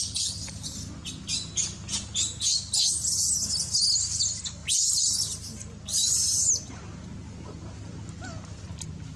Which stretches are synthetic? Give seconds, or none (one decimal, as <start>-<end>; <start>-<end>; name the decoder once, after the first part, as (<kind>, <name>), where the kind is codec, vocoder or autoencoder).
none